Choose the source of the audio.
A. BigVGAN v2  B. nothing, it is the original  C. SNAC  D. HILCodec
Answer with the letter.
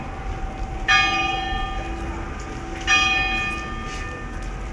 B